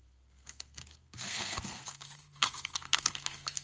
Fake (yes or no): yes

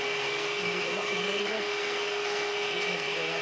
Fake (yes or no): yes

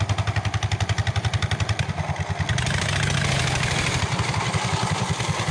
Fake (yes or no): no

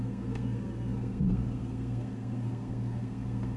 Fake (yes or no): yes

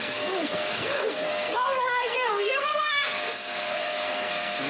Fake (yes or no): yes